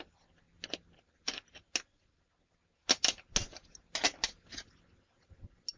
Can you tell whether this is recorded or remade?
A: recorded